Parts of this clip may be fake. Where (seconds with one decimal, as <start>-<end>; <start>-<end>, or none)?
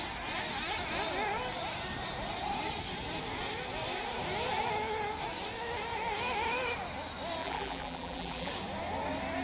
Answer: 7.4-8.5